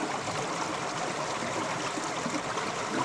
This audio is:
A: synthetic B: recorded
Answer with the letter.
B